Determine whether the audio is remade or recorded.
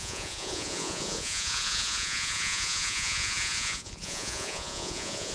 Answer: remade